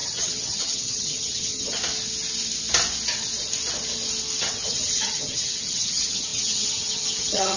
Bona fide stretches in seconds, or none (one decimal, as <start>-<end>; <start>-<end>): 1.8-4.4